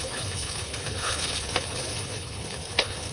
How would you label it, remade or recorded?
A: remade